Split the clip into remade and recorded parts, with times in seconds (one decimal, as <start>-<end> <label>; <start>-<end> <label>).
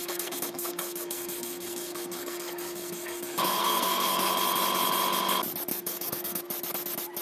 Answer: 0.0-4.3 remade; 4.3-5.7 recorded; 5.7-6.4 remade; 6.4-7.2 recorded